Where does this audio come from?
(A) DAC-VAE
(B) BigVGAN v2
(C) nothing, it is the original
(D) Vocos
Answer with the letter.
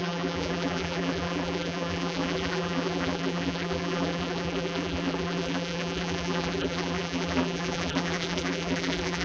B